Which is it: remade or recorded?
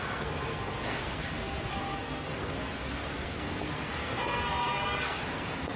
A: remade